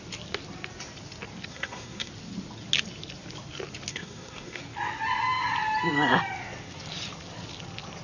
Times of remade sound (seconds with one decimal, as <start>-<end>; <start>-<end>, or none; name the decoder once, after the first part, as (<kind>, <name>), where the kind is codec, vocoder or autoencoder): 1.5-2.1 (codec, SNAC); 3.9-4.6